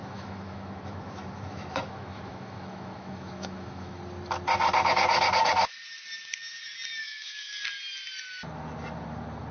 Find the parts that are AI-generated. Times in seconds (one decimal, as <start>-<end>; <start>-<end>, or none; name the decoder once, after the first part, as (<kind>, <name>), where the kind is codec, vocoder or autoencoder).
0.0-4.0 (autoencoder, DAC-VAE); 7.0-7.6